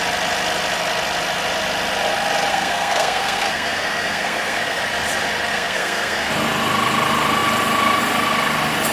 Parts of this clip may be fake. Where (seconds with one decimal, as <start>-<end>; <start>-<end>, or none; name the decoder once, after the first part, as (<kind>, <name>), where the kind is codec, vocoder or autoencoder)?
2.5-4.8 (codec, SNAC); 5.5-6.3